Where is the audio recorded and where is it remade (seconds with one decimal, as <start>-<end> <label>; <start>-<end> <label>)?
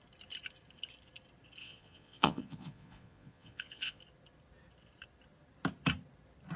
0.0-1.6 recorded; 1.6-4.0 remade; 4.0-6.6 recorded